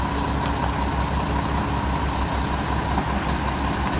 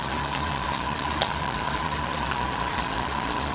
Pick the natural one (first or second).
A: first